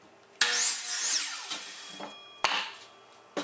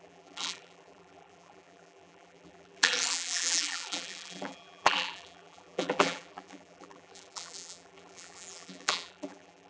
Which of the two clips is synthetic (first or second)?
second